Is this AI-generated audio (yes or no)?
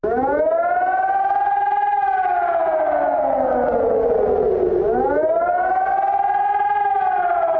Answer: no